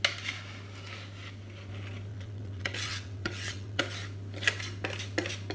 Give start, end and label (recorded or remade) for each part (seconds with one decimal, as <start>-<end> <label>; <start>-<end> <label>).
0.0-2.1 recorded; 2.1-3.8 remade; 3.8-5.5 recorded